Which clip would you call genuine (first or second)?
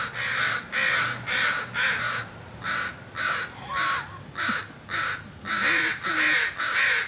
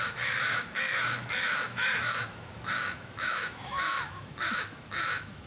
first